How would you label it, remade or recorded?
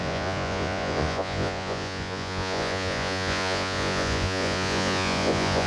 remade